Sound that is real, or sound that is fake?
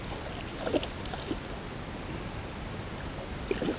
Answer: real